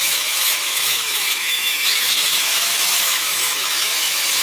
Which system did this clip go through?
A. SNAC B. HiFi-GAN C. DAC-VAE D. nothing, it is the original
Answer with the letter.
C